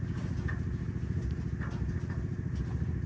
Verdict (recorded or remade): recorded